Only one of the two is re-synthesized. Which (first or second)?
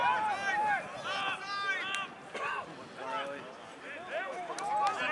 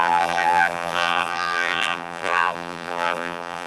second